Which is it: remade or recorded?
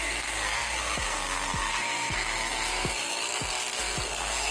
remade